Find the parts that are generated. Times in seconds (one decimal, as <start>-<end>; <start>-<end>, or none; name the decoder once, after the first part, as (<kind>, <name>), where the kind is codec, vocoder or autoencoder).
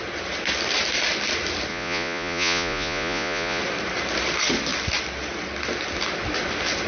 1.7-3.6 (vocoder, Vocos)